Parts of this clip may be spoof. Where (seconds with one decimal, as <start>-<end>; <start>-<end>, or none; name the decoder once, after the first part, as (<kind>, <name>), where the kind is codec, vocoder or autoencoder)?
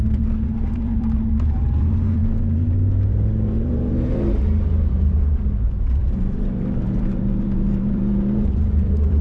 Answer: 0.0-9.2 (vocoder, BigVGAN v2)